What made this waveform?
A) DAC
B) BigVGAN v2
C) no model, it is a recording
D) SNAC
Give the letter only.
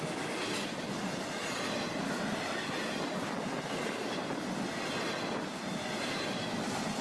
C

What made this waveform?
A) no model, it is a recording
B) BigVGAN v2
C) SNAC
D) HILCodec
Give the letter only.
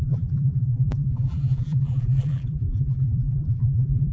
B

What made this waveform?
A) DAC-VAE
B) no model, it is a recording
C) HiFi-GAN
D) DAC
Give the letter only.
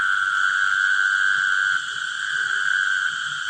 B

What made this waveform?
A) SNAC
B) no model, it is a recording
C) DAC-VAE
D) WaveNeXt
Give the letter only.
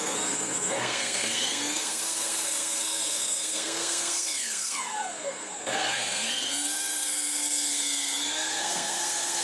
A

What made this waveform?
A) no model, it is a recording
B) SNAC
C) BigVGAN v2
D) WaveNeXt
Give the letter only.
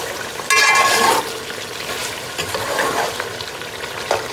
A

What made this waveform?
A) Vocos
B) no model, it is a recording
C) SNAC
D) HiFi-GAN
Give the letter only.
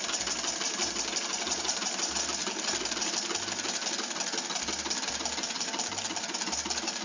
B